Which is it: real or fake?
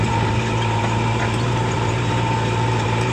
fake